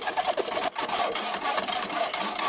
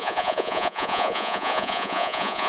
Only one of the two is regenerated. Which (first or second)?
second